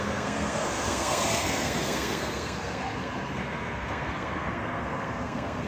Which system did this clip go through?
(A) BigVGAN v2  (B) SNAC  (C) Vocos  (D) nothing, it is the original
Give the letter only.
B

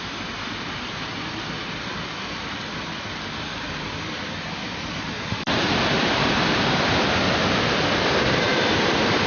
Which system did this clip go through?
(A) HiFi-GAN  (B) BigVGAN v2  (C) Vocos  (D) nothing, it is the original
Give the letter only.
B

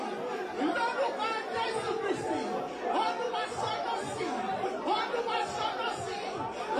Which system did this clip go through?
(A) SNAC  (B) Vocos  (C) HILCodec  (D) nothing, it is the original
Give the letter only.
D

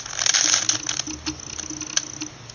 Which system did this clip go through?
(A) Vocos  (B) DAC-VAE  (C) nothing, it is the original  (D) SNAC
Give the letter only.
C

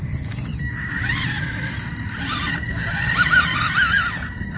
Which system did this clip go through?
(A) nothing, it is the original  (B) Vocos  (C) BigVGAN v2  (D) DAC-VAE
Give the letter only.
A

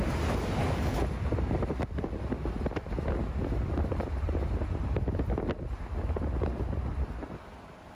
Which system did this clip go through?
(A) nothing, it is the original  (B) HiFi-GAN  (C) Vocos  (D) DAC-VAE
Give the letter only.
A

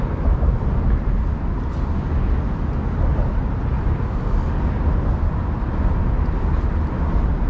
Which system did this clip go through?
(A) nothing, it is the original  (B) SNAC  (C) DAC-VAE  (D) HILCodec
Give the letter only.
A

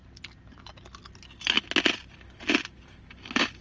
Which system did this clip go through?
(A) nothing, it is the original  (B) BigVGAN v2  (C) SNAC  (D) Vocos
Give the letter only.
A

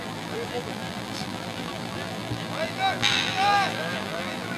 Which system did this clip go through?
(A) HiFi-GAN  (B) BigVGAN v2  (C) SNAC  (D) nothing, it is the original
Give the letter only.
B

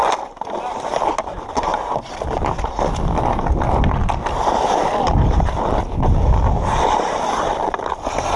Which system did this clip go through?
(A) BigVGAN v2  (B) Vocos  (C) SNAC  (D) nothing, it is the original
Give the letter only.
D